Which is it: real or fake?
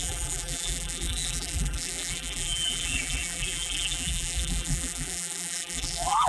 fake